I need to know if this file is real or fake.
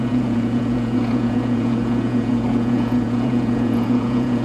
fake